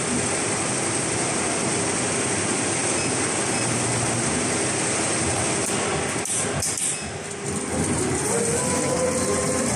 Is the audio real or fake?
real